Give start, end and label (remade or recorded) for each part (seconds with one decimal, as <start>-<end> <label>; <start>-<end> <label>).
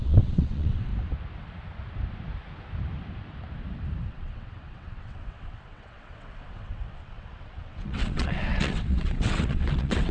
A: 0.0-0.9 remade; 0.9-4.1 recorded; 4.1-10.1 remade